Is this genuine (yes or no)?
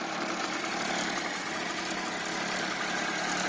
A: yes